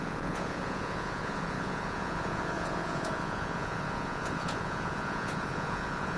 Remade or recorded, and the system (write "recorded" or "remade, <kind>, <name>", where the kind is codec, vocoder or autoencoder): remade, vocoder, Vocos